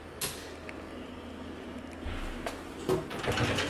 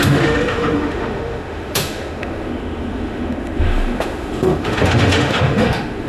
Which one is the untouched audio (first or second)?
first